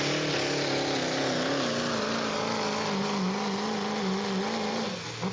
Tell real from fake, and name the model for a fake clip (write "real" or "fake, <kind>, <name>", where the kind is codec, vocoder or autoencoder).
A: real